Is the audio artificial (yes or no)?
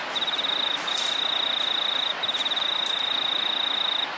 no